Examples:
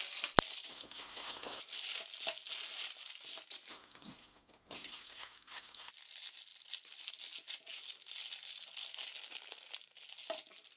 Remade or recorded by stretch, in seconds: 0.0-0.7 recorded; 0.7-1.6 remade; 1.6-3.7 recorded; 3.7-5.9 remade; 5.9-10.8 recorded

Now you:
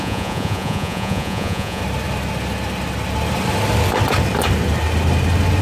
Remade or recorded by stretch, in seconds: 0.0-1.8 remade; 1.8-5.6 recorded

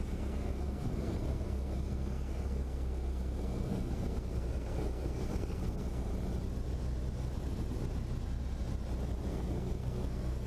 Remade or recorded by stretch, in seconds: 0.0-6.1 remade; 6.1-9.3 recorded; 9.3-10.5 remade

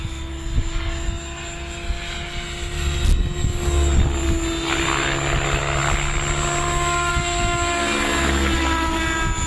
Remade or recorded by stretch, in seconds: 0.0-9.5 recorded